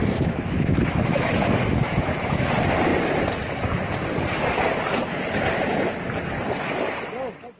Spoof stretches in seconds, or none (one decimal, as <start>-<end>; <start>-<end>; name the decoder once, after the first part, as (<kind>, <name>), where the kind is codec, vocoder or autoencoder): 0.0-2.5 (autoencoder, DAC-VAE)